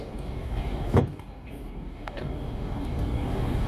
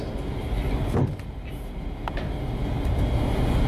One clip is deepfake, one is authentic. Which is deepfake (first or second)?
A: first